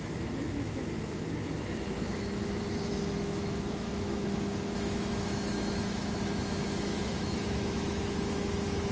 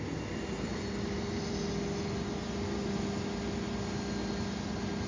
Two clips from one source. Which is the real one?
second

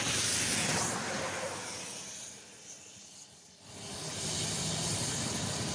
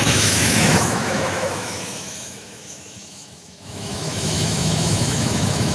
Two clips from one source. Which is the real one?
first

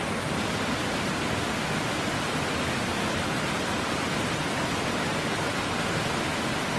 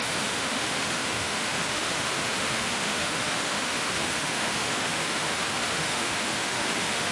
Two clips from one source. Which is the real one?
first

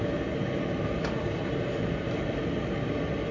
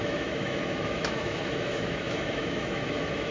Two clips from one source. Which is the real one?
first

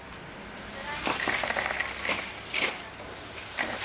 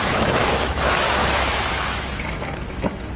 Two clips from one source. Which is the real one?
first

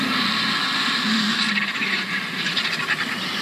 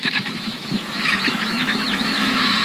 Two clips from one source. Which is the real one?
first